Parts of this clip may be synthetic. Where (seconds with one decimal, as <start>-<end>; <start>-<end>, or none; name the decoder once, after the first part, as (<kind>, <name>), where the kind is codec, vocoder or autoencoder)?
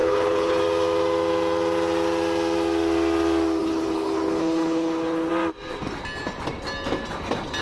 0.0-0.6 (codec, HILCodec); 3.6-5.3